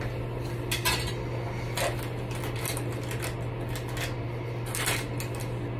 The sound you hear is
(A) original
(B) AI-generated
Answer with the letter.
A